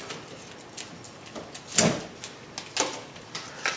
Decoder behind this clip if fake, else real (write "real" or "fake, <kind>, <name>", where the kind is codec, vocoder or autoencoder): real